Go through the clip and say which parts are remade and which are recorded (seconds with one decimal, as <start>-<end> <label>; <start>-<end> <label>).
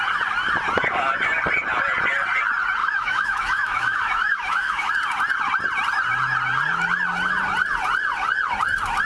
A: 0.0-2.8 recorded; 2.8-4.9 remade; 4.9-9.1 recorded